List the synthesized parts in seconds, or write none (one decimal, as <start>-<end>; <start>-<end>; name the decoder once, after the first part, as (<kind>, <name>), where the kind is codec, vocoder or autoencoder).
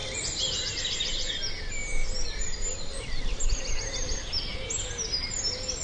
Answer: 0.0-0.7 (vocoder, BigVGAN v2); 2.9-3.7